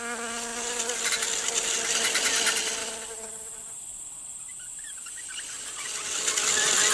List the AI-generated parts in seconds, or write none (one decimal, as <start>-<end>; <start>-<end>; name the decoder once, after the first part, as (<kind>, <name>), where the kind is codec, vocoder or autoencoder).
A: none